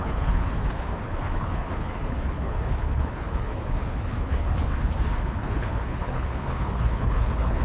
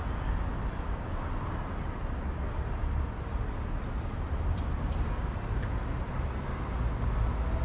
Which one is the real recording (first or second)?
second